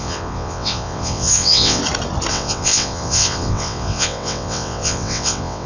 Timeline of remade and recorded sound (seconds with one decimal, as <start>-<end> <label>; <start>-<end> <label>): 0.0-1.8 remade; 1.8-2.3 recorded; 2.3-5.7 remade